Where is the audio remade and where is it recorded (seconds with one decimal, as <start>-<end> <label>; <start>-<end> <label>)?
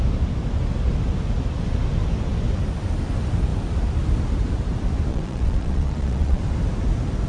0.0-5.1 recorded; 5.1-6.4 remade; 6.4-7.3 recorded